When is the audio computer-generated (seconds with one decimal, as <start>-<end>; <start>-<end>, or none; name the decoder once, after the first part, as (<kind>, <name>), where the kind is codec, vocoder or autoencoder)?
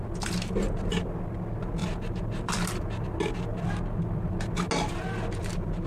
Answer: none